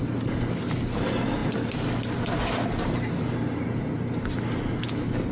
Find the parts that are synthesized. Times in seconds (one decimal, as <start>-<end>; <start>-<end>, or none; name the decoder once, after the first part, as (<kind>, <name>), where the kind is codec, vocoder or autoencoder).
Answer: none